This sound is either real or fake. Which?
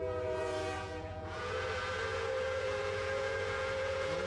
fake